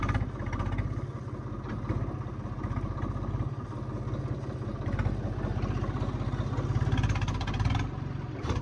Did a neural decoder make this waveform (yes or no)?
no